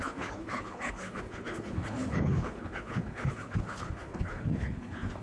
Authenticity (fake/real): fake